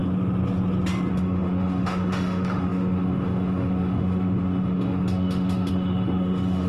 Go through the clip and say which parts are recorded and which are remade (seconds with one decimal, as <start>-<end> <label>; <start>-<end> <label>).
0.0-1.1 recorded; 1.1-6.7 remade